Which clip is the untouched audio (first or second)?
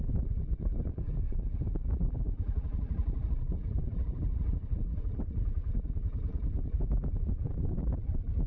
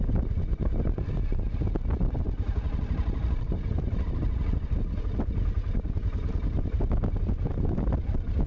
second